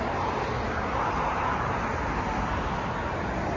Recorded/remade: recorded